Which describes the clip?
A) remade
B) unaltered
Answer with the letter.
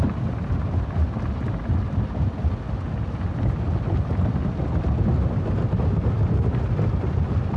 B